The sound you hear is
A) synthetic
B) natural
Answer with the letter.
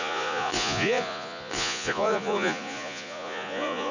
A